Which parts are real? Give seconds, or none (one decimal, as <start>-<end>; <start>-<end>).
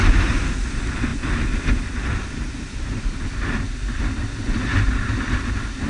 0.0-5.9